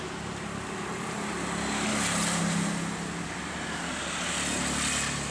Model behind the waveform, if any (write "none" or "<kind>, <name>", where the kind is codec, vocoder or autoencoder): none